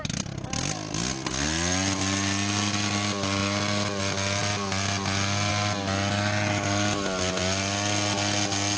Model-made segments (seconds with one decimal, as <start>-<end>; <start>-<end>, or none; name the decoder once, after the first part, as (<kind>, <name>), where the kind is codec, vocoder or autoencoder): none